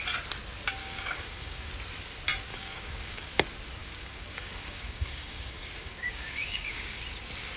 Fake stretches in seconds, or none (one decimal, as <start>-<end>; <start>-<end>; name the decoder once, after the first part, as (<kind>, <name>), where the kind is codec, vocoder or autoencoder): 0.8-1.7 (codec, DAC); 2.5-3.3; 3.8-7.0